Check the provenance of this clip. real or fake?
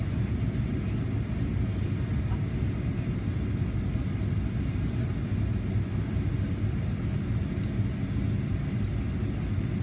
real